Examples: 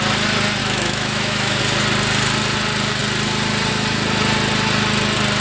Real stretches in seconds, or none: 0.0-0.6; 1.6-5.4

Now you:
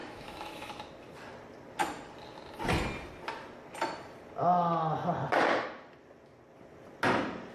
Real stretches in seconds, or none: 0.7-7.5

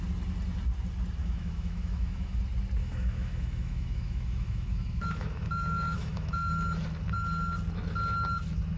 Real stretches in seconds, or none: 0.0-1.2; 2.4-2.8; 6.5-8.8